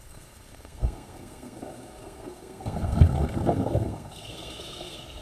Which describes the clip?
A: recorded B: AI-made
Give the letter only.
B